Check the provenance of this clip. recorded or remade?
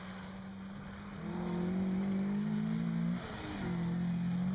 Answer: recorded